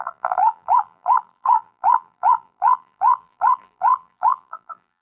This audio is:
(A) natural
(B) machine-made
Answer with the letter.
B